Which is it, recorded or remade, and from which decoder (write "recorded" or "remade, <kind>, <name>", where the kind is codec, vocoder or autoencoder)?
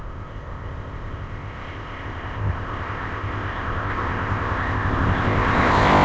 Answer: remade, codec, ZipCodec